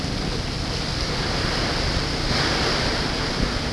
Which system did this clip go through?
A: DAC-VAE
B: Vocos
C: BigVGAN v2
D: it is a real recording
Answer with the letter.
D